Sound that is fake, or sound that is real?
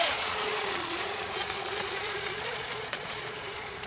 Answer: fake